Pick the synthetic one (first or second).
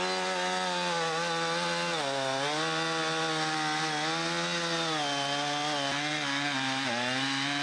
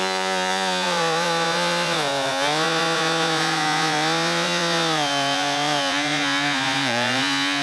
second